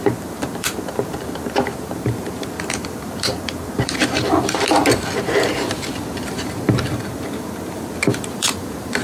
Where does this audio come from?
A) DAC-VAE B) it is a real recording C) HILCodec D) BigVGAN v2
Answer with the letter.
D